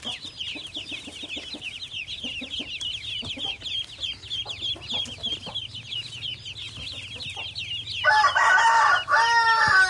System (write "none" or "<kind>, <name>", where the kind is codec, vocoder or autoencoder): none